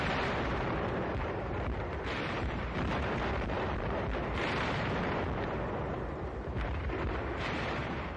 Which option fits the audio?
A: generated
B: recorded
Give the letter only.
A